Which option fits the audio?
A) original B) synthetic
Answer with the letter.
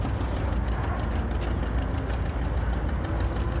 A